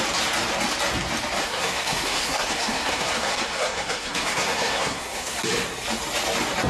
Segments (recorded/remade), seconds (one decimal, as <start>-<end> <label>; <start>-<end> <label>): 0.0-1.4 recorded; 1.4-5.4 remade; 5.4-6.7 recorded